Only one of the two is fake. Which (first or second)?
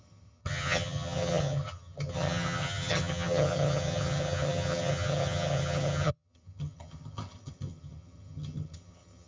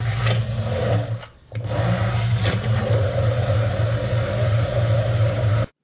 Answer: first